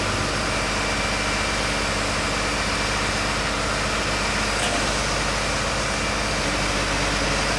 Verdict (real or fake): real